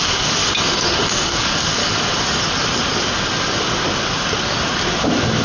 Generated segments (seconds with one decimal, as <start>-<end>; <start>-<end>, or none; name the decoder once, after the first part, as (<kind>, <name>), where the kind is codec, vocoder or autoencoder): 0.0-0.4 (codec, DAC); 1.1-1.8; 5.0-5.4